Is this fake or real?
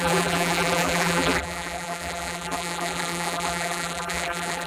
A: fake